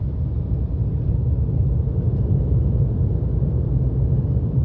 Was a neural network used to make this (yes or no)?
no